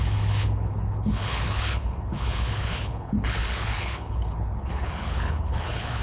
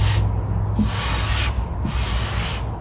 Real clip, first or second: second